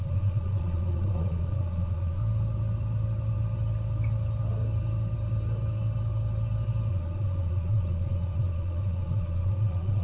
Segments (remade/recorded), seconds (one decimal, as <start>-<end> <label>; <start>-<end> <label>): 0.0-2.2 remade; 2.2-6.9 recorded; 6.9-10.0 remade